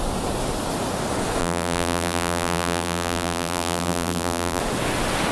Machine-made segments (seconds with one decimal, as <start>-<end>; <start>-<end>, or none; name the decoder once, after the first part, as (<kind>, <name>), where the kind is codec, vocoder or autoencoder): 1.4-4.6 (vocoder, BigVGAN v2)